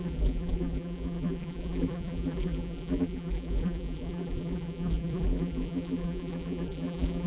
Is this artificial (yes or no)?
yes